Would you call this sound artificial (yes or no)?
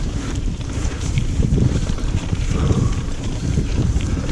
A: yes